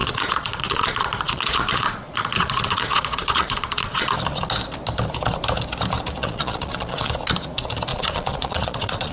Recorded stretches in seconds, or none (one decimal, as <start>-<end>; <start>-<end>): 4.1-6.2; 7.1-7.9